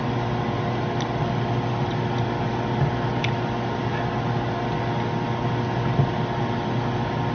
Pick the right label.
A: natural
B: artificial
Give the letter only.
A